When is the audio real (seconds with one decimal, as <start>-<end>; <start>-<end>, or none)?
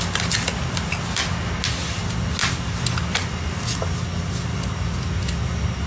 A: 0.0-5.9